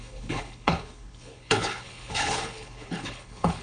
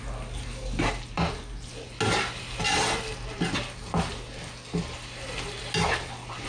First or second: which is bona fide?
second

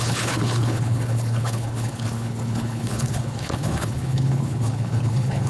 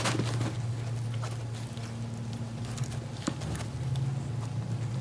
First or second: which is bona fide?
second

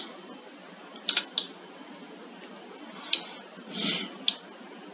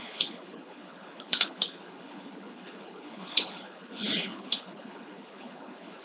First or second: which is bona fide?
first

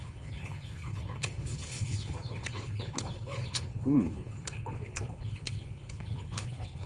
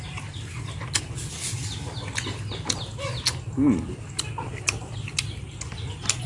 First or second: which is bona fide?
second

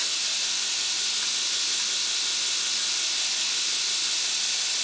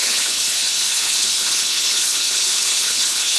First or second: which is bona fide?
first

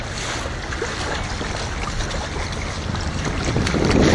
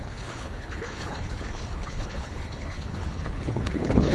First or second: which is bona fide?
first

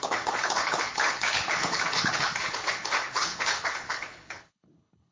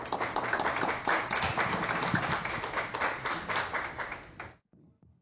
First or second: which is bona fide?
second